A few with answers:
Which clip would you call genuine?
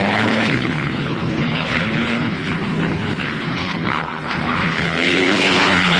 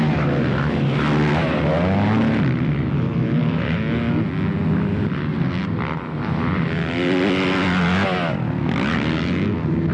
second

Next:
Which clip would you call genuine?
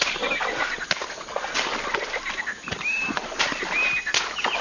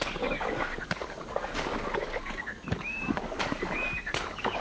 first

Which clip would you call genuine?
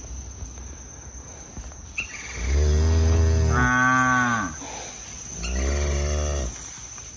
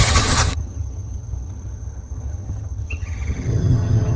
first